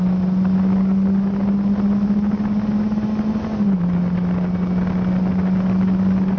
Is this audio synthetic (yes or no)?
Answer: no